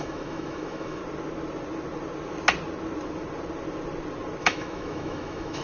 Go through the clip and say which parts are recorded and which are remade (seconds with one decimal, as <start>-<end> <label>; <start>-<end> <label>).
0.0-1.0 remade; 1.0-4.4 recorded; 4.4-5.6 remade